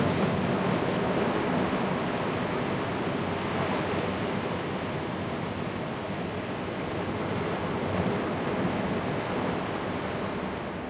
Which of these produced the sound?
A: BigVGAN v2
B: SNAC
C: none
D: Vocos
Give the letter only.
C